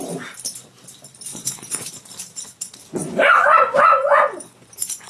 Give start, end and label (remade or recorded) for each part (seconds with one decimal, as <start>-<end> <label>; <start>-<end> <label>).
0.0-1.3 recorded; 1.3-1.9 remade; 1.9-3.0 recorded; 3.0-5.1 remade